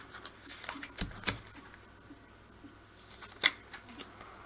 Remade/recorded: recorded